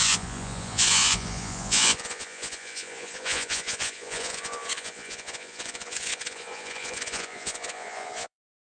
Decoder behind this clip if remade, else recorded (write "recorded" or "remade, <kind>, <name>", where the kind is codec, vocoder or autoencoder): remade, vocoder, Vocos